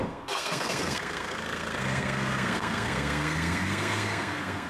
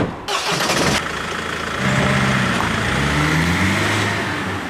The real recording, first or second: second